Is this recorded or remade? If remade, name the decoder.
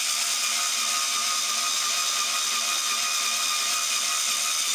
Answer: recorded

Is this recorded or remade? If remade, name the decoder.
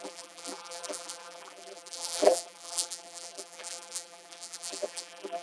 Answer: remade, vocoder, BigVGAN v2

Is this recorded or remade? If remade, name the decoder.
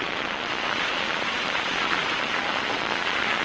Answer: remade, vocoder, Vocos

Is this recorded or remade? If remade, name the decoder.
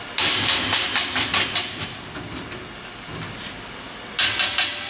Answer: recorded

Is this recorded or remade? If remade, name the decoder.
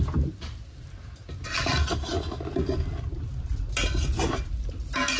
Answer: recorded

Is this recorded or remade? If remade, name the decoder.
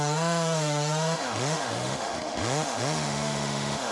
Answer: remade, autoencoder, DAC-VAE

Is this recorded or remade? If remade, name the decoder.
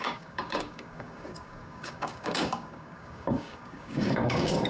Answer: remade, codec, DAC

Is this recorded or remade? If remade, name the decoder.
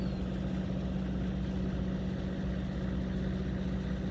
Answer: recorded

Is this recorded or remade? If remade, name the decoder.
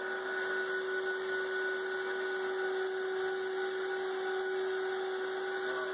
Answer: recorded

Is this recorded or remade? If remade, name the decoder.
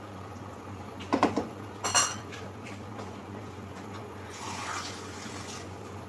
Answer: remade, vocoder, Vocos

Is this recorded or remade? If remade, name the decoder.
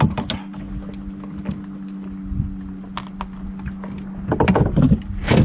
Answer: recorded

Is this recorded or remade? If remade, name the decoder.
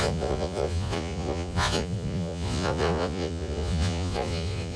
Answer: remade, vocoder, Vocos